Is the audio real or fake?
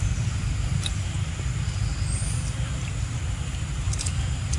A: real